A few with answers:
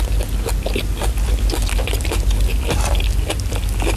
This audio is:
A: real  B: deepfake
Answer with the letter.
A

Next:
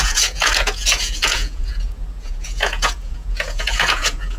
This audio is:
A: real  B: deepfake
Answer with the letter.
B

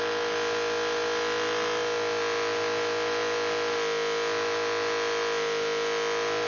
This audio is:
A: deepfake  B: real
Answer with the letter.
B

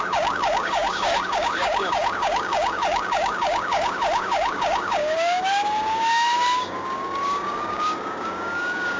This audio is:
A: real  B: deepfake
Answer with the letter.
B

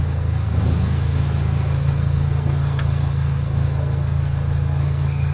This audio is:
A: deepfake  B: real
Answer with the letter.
A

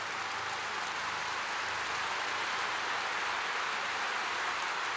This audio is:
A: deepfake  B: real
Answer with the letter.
B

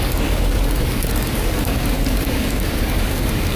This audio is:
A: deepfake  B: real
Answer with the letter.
A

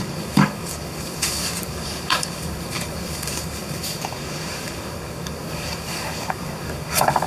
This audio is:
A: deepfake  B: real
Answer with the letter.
A